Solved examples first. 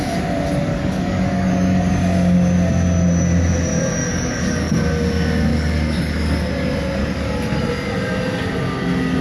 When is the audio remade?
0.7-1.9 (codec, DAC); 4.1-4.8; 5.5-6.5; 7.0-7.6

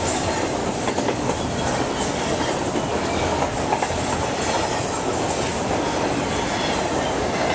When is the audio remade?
0.6-1.4 (codec, DAC); 2.9-4.0

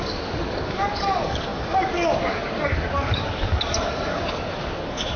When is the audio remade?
0.0-5.2 (codec, DAC)

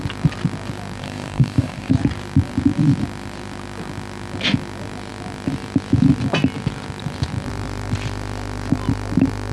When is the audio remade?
1.0-1.9 (codec, DAC)